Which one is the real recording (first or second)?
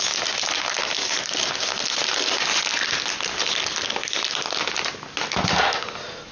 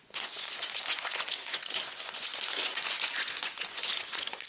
first